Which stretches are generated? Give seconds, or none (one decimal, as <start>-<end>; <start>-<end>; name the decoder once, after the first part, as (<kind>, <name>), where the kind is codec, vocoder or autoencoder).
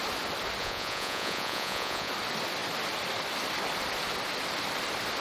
0.6-2.1 (vocoder, Vocos)